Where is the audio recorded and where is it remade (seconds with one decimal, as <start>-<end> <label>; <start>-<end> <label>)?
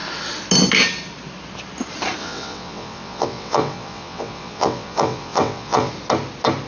0.0-2.2 recorded; 2.2-5.9 remade; 5.9-6.7 recorded